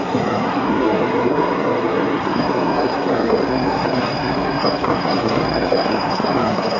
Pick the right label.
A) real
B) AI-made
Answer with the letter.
B